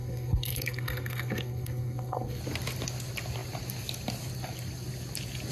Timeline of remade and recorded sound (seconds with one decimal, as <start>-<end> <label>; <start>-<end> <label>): 0.0-2.4 remade; 2.4-5.5 recorded